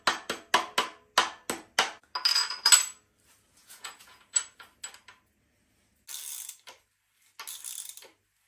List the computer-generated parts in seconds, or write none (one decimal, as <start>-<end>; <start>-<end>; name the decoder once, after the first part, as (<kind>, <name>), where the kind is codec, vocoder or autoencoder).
3.6-4.4 (vocoder, Vocos)

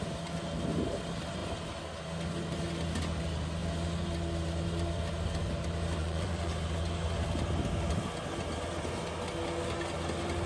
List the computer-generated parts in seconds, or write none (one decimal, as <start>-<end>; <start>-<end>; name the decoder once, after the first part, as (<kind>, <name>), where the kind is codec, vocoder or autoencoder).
6.0-6.5 (vocoder, Vocos)

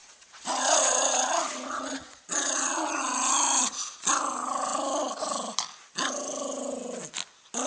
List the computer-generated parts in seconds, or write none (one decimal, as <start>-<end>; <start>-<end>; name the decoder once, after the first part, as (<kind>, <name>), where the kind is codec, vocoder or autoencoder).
0.0-3.0 (vocoder, Vocos)